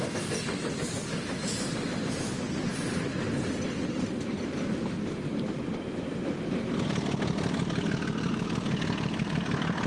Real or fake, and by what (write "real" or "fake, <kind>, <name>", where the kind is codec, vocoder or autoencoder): real